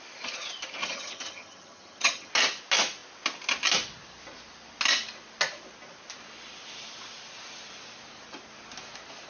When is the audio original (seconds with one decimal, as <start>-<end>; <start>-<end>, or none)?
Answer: 0.0-0.8; 2.3-9.3